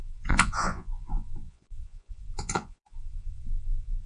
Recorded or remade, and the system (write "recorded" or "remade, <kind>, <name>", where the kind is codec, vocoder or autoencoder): remade, vocoder, Vocos